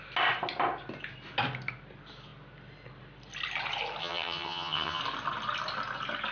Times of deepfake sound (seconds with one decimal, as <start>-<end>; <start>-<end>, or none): 4.0-5.0